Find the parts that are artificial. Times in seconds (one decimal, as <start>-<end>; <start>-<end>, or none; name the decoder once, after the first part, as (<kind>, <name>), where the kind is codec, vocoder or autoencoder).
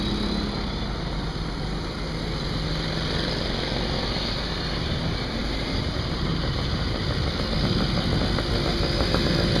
5.4-7.0 (vocoder, BigVGAN v2)